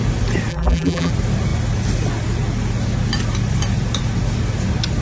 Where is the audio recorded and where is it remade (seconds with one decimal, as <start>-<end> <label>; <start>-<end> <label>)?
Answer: 0.0-0.5 recorded; 0.5-1.1 remade; 1.1-5.0 recorded